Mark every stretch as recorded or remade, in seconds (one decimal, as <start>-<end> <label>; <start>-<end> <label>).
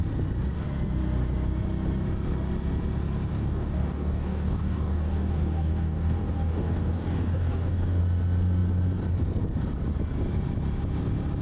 0.0-3.3 recorded; 3.3-8.0 remade; 8.0-11.4 recorded